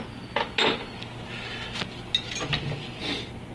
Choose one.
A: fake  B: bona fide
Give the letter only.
B